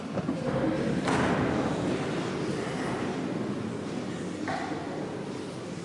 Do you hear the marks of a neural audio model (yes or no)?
no